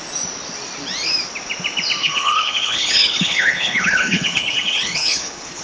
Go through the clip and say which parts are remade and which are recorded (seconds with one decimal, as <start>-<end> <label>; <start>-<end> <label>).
0.0-2.0 recorded; 2.0-5.6 remade